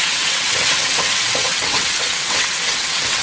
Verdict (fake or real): fake